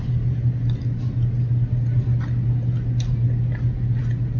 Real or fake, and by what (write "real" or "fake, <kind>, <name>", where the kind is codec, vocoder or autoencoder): real